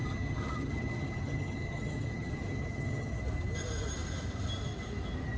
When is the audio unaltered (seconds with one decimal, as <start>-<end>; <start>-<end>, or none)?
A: 3.2-5.4